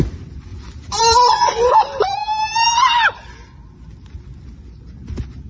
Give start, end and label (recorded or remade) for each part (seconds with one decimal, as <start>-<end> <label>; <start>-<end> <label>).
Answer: 0.0-0.5 recorded; 0.5-1.3 remade; 1.3-5.5 recorded